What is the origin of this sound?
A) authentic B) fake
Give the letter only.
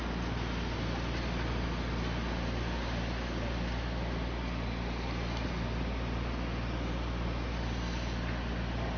A